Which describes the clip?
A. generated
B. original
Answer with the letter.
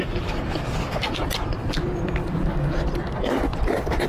A